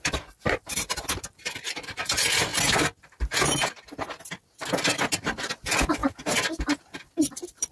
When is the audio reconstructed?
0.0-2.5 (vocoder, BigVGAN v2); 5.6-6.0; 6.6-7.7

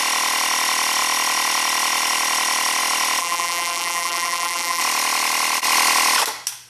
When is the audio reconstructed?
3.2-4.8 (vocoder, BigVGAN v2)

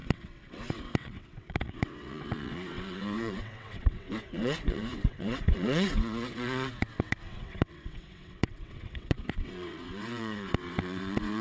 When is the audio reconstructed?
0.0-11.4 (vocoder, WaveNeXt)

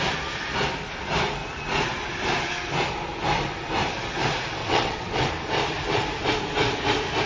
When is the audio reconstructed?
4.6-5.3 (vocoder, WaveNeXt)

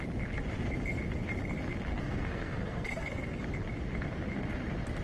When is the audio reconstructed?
1.9-3.4 (codec, SNAC)